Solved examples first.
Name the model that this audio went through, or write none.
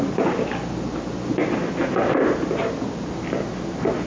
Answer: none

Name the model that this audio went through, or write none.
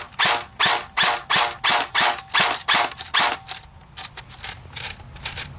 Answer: none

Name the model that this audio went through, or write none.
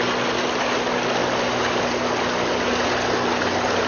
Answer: none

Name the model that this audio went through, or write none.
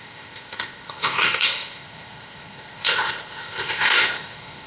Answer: codec, ZipCodec